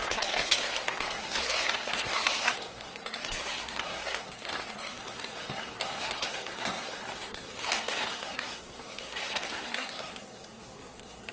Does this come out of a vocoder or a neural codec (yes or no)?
yes